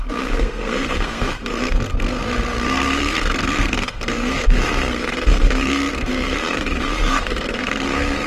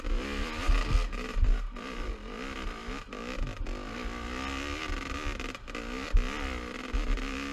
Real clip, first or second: second